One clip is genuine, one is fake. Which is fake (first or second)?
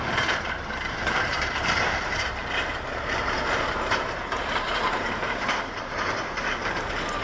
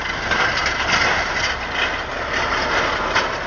first